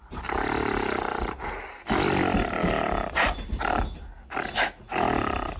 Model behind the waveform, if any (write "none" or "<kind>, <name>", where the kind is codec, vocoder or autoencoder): none